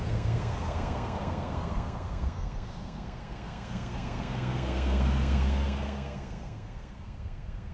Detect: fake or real fake